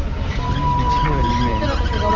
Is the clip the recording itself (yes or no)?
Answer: yes